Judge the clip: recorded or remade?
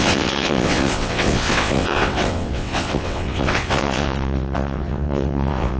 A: remade